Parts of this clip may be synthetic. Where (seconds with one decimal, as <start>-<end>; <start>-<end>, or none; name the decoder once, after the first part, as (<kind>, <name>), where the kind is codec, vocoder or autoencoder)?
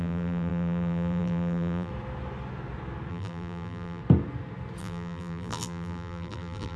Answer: 0.0-1.9 (vocoder, BigVGAN v2); 3.1-4.0; 4.8-6.8